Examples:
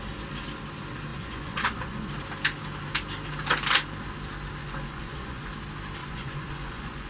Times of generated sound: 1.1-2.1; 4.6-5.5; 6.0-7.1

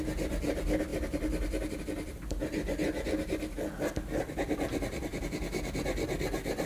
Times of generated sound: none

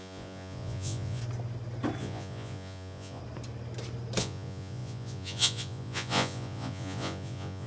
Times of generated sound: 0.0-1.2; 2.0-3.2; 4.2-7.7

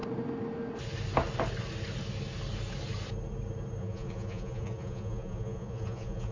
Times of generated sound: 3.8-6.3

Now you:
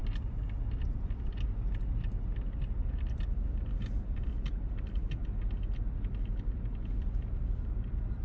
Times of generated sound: 0.7-1.3; 2.5-5.2; 6.5-8.2

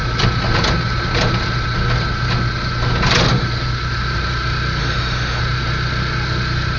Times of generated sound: 4.8-5.4

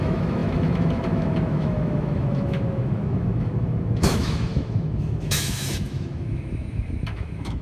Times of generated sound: 0.0-7.6

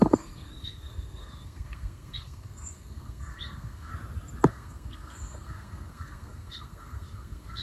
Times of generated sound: 0.0-3.9; 4.5-7.6